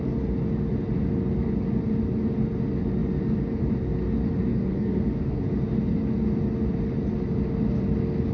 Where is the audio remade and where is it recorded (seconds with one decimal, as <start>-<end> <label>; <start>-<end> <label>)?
0.0-4.5 recorded; 4.5-5.4 remade; 5.4-8.3 recorded